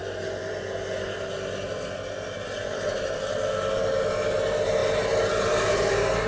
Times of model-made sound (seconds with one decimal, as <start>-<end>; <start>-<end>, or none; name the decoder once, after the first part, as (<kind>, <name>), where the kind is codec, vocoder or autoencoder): none